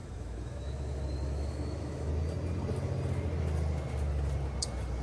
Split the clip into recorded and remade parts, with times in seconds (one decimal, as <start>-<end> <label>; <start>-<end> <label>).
0.0-2.1 remade; 2.1-5.0 recorded